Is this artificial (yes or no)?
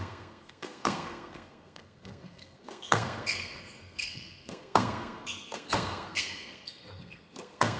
yes